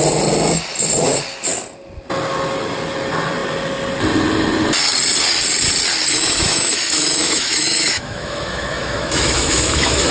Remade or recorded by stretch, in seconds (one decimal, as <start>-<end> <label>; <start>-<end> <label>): 0.0-6.1 recorded; 6.1-10.1 remade